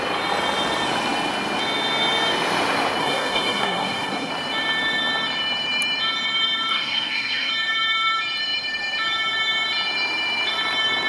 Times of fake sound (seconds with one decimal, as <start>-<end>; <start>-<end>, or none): 3.0-4.3; 6.7-7.5